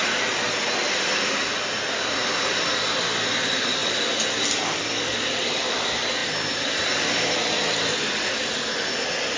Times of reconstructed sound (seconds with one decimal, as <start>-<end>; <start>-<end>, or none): 3.8-4.9